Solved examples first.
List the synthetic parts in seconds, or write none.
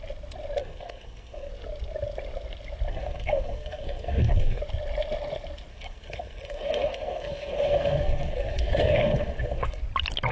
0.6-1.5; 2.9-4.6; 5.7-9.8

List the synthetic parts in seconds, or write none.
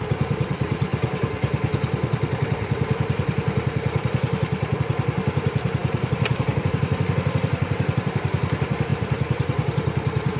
none